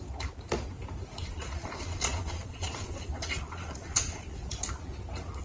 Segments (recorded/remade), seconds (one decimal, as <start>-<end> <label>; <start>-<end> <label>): 0.0-1.3 recorded; 1.3-4.5 remade; 4.5-5.4 recorded